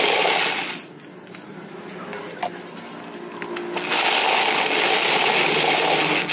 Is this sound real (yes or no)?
yes